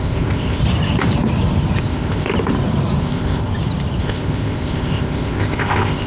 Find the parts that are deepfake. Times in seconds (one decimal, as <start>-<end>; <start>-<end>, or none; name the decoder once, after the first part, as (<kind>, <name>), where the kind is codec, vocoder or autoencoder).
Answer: 0.0-0.6 (codec, ZipCodec); 1.8-2.3; 3.0-3.4; 4.0-6.1